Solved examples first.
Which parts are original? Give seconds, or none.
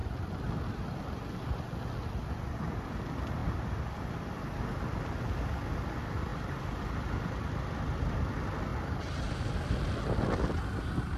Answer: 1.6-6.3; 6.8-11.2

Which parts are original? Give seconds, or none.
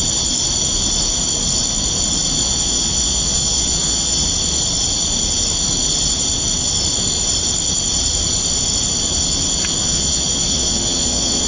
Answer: 0.0-2.4; 4.2-9.8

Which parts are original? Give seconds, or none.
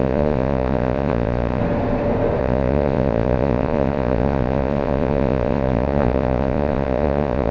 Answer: 1.6-2.4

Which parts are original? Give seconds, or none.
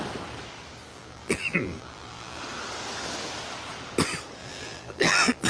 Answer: 0.0-0.9; 2.4-4.4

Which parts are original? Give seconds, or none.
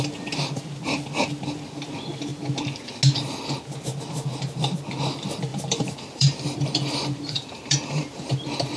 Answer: 0.0-5.5; 8.3-8.8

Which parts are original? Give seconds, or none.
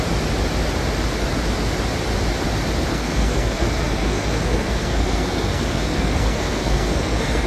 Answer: 0.0-2.9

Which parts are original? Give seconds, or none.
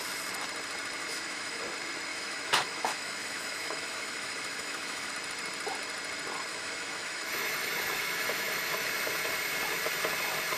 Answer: 0.0-1.0; 1.6-2.1; 5.1-6.5; 8.9-10.6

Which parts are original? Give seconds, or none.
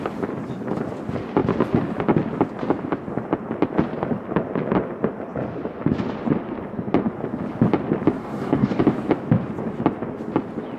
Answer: 0.0-8.2; 8.8-10.8